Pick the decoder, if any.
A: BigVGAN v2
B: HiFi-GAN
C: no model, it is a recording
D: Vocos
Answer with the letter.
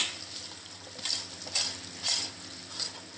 C